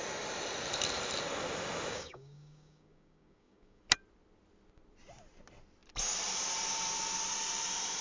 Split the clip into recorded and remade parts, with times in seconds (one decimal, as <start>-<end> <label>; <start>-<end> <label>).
0.0-1.9 recorded; 1.9-3.8 remade; 3.8-8.0 recorded